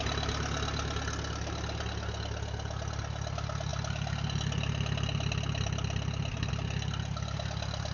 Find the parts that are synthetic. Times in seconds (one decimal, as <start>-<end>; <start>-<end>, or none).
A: none